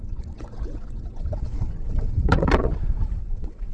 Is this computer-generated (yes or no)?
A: yes